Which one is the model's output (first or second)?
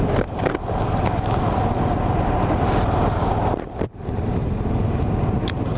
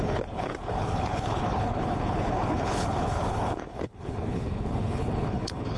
second